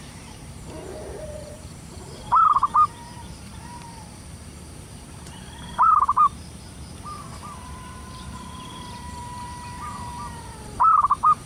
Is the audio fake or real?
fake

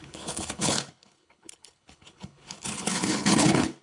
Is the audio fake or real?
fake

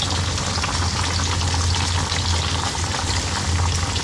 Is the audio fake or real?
real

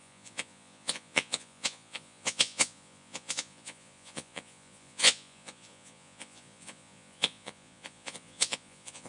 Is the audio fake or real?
fake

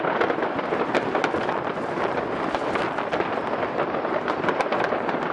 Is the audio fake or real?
real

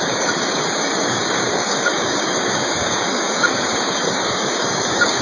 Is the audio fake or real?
fake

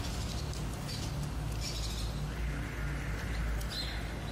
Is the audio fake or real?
real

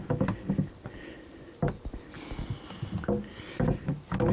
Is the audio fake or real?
real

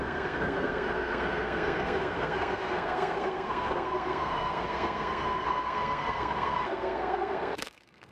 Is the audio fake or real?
fake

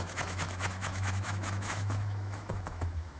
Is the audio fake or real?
fake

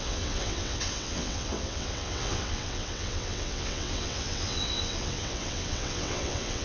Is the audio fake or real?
fake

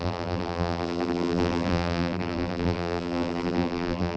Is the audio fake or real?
fake